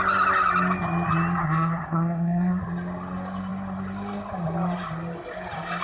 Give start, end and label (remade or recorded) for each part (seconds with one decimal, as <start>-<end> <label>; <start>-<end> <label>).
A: 0.0-1.4 recorded; 1.4-2.6 remade; 2.6-5.8 recorded